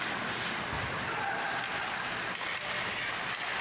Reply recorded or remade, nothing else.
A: recorded